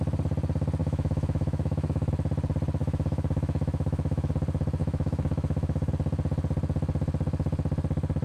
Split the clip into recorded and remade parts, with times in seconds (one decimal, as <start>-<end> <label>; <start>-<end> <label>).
0.0-0.8 recorded; 0.8-2.1 remade; 2.1-2.8 recorded; 2.8-4.3 remade; 4.3-4.8 recorded; 4.8-5.9 remade; 5.9-8.2 recorded